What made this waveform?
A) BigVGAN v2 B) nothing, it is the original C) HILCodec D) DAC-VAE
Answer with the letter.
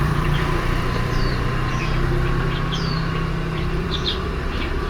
A